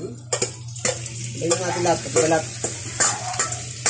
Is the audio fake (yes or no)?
no